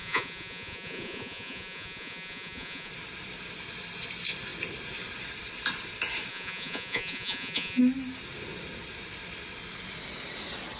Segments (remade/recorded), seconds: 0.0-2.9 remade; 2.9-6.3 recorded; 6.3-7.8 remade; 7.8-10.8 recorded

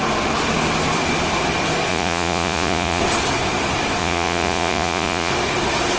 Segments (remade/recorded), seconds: 0.0-1.9 recorded; 1.9-3.0 remade; 3.0-4.0 recorded; 4.0-5.3 remade; 5.3-6.0 recorded

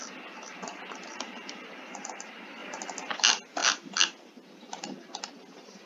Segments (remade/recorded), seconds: 0.0-5.9 recorded

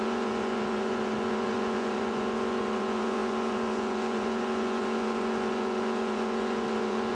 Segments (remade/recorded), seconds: 0.0-7.1 remade